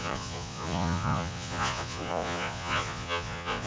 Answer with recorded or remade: remade